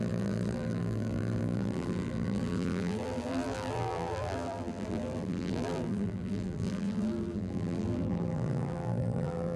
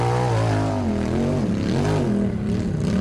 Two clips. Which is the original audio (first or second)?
second